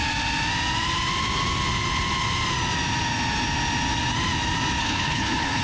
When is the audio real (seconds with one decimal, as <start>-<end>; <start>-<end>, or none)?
0.0-4.8